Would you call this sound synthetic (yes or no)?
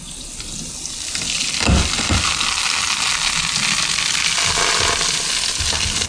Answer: no